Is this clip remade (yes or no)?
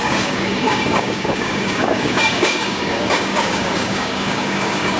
yes